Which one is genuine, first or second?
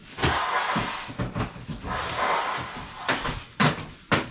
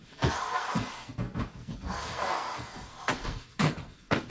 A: first